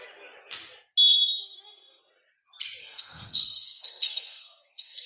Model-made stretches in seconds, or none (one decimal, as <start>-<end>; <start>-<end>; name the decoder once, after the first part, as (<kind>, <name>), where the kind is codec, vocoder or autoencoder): 1.3-2.0 (codec, SNAC); 2.8-5.1